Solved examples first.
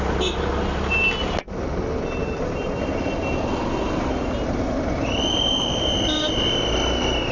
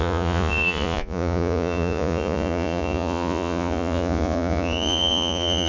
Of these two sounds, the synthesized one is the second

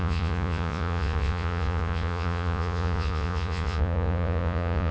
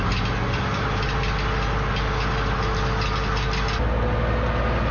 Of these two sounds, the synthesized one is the first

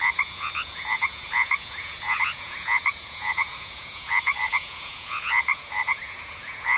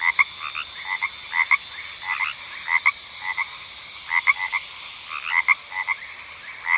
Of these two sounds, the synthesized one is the first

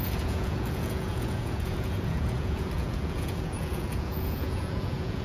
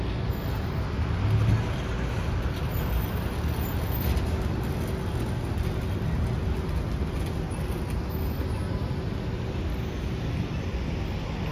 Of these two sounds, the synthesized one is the first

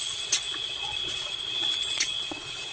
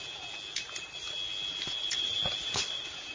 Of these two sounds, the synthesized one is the first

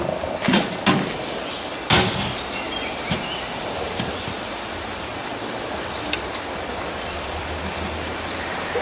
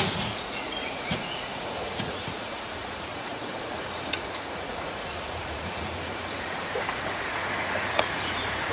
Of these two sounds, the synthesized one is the second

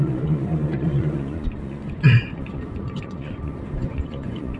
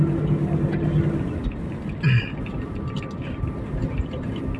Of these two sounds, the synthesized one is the first